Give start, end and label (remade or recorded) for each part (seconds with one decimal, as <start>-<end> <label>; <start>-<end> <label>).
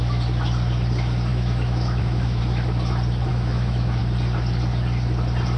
0.0-1.3 recorded; 1.3-2.4 remade; 2.4-3.3 recorded; 3.3-4.0 remade; 4.0-5.6 recorded